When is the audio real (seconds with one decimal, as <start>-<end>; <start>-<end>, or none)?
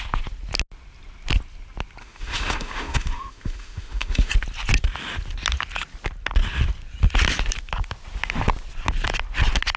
0.0-2.0; 4.3-9.8